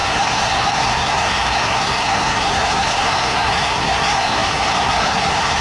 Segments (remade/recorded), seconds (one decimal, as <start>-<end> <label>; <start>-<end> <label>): 0.0-5.6 remade